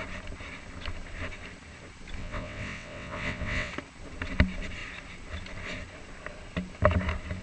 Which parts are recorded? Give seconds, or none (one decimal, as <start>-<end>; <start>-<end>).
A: 0.0-2.2; 3.7-7.4